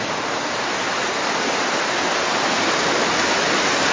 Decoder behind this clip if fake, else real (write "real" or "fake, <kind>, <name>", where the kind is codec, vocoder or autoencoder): real